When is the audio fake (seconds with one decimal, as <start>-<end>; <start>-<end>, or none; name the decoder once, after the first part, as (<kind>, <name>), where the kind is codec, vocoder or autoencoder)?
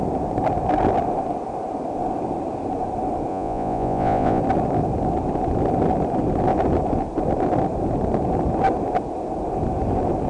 3.3-4.4 (vocoder, Vocos)